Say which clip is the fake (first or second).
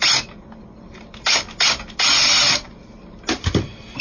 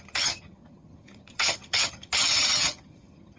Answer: second